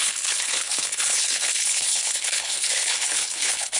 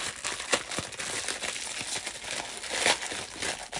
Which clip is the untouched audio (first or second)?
second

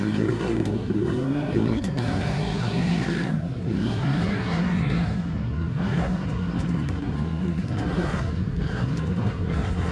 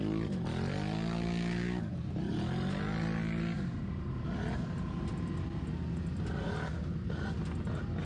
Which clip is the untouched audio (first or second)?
second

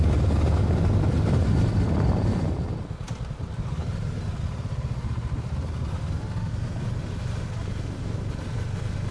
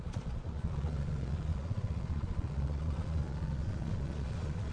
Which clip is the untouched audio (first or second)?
first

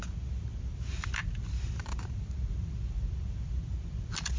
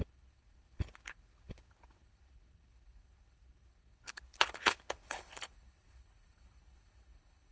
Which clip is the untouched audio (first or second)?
first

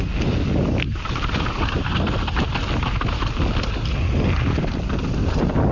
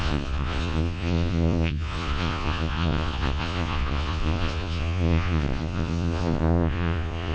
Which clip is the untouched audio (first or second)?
first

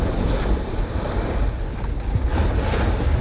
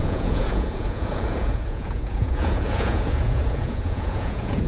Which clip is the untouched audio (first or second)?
first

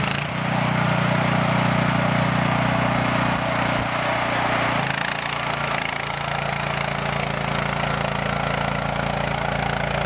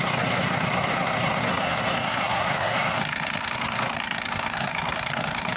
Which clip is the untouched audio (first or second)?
first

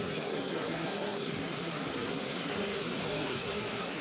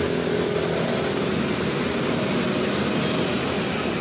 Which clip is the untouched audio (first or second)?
second